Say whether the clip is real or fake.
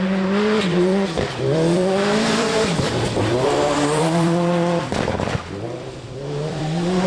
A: fake